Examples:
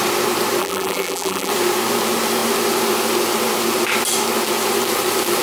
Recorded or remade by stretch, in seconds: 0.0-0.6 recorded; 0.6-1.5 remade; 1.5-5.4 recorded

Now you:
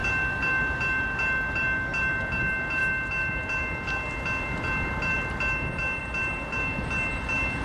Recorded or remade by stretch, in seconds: 0.0-7.6 recorded

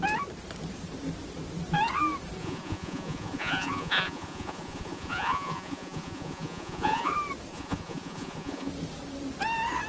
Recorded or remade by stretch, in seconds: 0.0-2.4 recorded; 2.4-7.1 remade; 7.1-7.5 recorded; 7.5-8.7 remade; 8.7-9.9 recorded

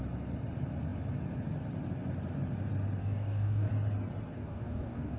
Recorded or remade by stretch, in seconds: 0.0-3.0 recorded; 3.0-3.7 remade; 3.7-4.3 recorded; 4.3-5.2 remade

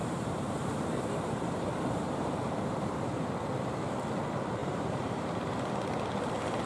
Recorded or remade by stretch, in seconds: 0.0-3.3 remade; 3.3-4.6 recorded; 4.6-5.7 remade; 5.7-6.7 recorded

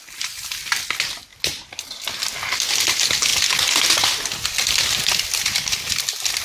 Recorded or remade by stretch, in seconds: 0.0-6.4 recorded

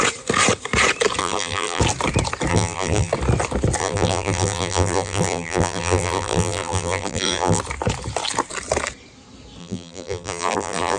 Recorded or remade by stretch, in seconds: 0.0-1.2 recorded; 1.2-1.8 remade; 1.8-2.5 recorded; 2.5-3.1 remade; 3.1-3.8 recorded; 3.8-7.6 remade; 7.6-9.6 recorded; 9.6-11.0 remade

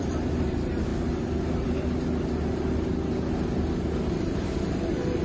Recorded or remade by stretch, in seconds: 0.0-0.9 remade; 0.9-4.0 recorded; 4.0-5.2 remade